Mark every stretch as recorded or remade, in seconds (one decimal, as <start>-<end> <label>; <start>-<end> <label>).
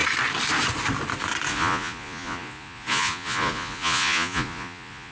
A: 0.0-1.5 recorded; 1.5-5.1 remade